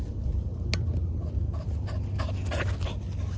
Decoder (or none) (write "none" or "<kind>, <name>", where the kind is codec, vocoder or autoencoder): none